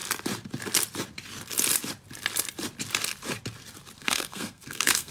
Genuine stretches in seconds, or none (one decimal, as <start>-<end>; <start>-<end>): 0.0-4.0